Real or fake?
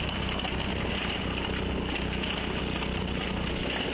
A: real